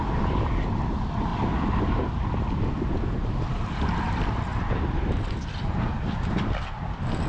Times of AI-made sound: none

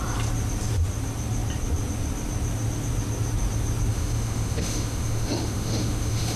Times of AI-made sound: 3.9-6.4 (autoencoder, DAC-VAE)

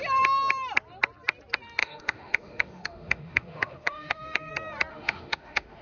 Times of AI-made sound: 1.8-4.5 (autoencoder, DAC-VAE); 4.9-5.8

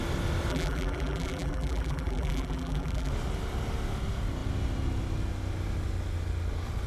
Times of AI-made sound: 0.5-3.1 (vocoder, BigVGAN v2)

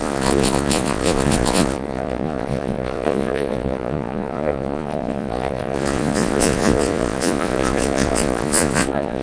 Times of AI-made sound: 0.0-9.2 (vocoder, Vocos)

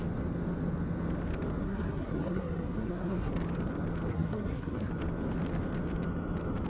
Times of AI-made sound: 1.6-3.3 (codec, SNAC); 4.1-4.9